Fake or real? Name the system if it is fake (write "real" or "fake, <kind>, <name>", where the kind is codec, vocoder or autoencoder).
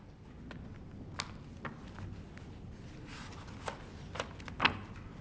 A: real